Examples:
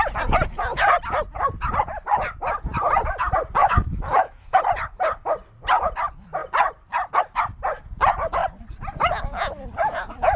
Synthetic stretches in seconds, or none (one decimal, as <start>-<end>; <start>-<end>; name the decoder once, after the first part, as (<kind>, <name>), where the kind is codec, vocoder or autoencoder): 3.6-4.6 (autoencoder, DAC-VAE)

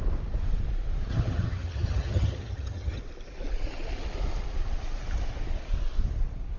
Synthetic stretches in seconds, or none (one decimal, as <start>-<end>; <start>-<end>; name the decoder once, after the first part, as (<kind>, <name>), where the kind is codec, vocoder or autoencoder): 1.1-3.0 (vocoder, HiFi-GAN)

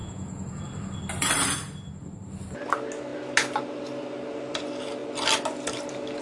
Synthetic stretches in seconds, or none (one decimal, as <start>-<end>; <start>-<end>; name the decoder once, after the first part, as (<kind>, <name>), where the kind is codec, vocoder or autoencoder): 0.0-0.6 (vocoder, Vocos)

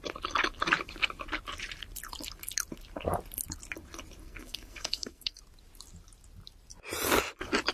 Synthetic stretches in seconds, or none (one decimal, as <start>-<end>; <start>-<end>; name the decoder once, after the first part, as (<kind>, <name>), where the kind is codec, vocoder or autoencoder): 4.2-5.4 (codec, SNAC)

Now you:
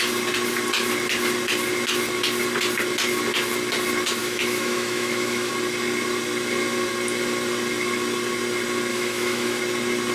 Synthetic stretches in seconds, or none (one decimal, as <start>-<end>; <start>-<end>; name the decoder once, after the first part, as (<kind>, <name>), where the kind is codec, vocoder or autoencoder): 4.2-5.5 (autoencoder, DAC-VAE); 8.9-9.6

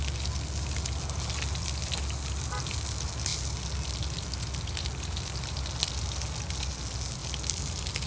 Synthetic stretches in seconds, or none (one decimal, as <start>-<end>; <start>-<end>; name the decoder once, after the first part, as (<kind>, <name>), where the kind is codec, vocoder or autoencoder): none

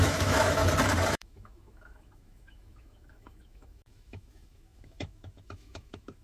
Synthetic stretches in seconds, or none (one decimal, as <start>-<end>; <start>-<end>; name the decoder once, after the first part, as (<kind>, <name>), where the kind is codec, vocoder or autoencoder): 0.0-0.6 (autoencoder, DAC-VAE); 1.1-6.2

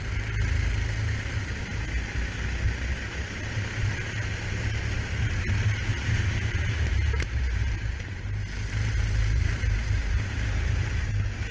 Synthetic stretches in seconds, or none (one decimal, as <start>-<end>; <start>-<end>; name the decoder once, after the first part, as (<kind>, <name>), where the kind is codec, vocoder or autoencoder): 5.9-11.1 (vocoder, BigVGAN v2)